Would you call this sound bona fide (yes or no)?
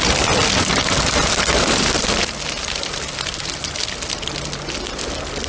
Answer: yes